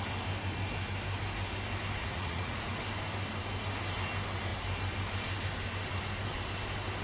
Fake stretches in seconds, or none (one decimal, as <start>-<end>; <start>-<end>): 2.0-2.7